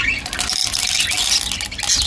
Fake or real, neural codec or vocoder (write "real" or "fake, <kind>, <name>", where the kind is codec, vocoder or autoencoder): real